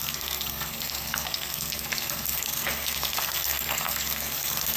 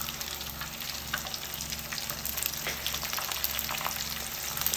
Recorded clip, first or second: second